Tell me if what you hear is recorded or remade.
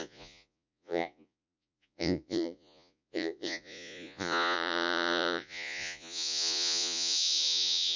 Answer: remade